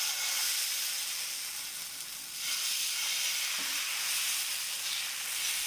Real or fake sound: real